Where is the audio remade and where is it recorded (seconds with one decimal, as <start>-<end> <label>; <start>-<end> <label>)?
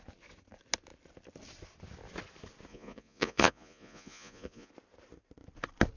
0.0-2.7 recorded; 2.7-4.7 remade; 4.7-6.0 recorded